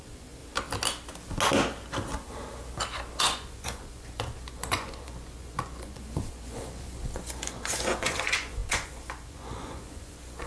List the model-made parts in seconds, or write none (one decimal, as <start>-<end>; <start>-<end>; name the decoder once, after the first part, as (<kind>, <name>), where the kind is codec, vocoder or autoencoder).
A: 0.0-0.4 (vocoder, Vocos); 3.2-10.5